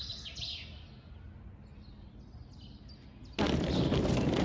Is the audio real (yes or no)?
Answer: yes